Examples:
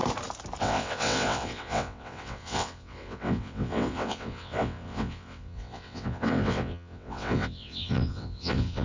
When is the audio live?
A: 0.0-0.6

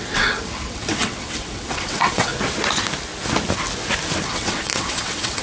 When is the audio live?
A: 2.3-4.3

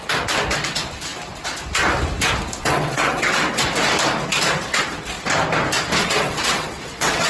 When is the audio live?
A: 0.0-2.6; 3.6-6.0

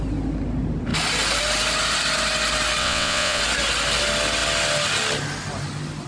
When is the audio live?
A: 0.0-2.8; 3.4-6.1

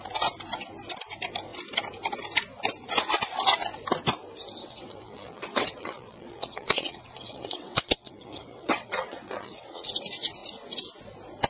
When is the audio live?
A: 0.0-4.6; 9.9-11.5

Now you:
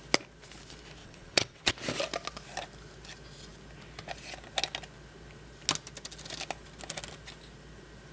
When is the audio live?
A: 0.0-1.0; 1.7-8.1